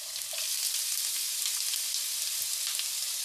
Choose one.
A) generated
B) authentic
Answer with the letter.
A